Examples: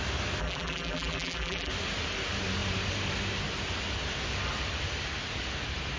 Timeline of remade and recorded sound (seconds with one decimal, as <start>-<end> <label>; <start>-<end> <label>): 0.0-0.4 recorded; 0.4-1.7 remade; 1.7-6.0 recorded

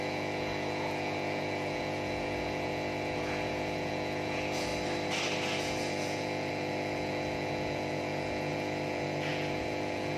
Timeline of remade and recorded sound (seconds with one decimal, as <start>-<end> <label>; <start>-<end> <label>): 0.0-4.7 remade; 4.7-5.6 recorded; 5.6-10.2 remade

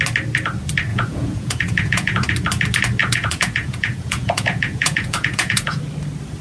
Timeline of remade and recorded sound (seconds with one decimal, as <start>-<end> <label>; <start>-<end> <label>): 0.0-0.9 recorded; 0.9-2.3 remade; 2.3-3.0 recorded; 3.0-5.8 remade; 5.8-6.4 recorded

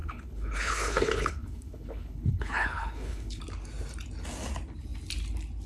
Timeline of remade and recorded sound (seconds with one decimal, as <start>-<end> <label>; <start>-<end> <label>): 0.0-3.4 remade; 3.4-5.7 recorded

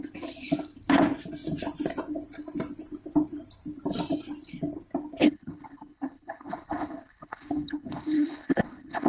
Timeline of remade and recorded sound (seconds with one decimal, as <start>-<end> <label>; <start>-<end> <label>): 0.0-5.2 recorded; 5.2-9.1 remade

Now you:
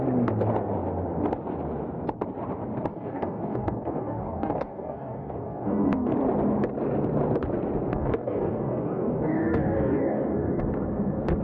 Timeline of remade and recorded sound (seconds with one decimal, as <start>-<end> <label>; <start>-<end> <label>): 0.0-2.9 recorded; 2.9-6.1 remade; 6.1-7.9 recorded; 7.9-10.6 remade; 10.6-11.4 recorded

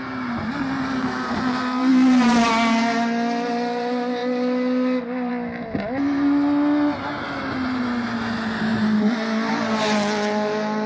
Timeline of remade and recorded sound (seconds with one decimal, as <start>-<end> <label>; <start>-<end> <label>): 0.0-10.9 recorded